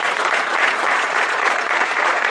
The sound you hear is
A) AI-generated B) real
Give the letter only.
A